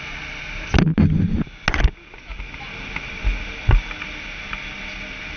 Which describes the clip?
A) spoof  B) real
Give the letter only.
B